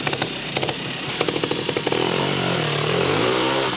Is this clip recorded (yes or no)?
no